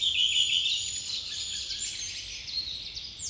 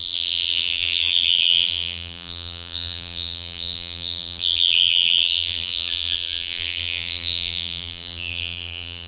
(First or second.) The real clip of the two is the first